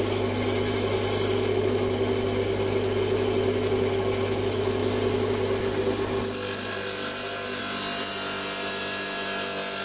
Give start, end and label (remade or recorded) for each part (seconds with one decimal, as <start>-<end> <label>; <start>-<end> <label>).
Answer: 0.0-9.8 recorded